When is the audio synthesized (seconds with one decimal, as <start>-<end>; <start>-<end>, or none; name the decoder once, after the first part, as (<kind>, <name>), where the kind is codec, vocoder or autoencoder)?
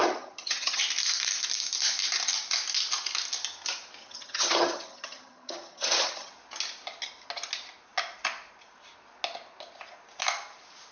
0.0-0.8 (vocoder, HiFi-GAN); 4.0-6.3